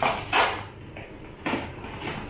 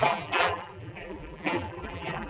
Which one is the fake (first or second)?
second